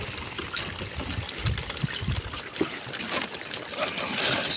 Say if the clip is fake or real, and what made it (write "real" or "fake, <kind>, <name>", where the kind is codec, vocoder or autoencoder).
real